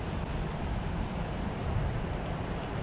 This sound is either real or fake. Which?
real